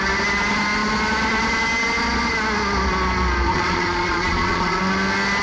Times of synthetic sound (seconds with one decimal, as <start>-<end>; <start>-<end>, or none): 3.5-4.8